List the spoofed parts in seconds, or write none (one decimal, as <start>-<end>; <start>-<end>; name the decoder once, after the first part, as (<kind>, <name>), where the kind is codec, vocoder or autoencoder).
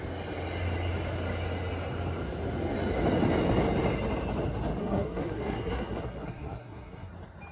4.8-7.1 (codec, SNAC)